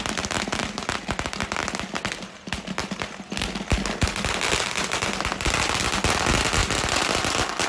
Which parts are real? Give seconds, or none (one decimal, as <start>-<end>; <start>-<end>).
0.0-7.7